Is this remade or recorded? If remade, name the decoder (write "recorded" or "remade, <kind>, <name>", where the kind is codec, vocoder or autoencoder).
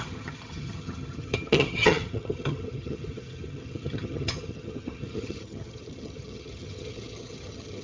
remade, vocoder, HiFi-GAN